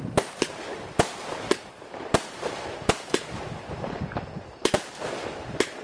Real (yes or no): no